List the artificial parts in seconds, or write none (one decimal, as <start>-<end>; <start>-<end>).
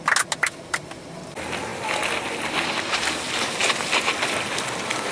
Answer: none